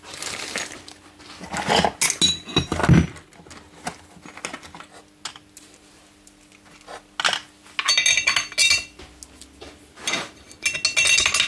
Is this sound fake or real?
real